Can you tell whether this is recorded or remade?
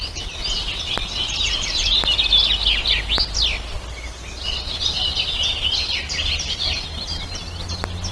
recorded